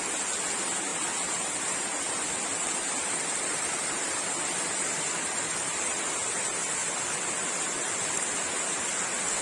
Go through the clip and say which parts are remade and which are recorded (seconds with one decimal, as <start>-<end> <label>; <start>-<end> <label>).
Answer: 0.0-0.9 recorded; 0.9-6.1 remade; 6.1-6.8 recorded; 6.8-8.1 remade; 8.1-9.4 recorded